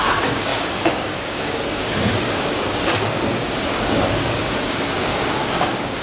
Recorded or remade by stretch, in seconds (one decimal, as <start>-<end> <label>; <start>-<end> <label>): 0.0-6.0 remade